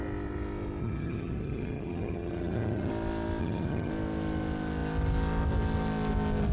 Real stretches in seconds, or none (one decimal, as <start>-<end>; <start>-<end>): 0.0-0.8; 2.9-3.4; 3.9-6.5